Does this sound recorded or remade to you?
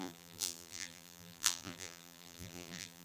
remade